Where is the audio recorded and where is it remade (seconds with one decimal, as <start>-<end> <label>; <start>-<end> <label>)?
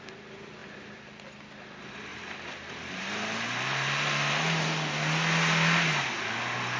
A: 0.0-6.8 recorded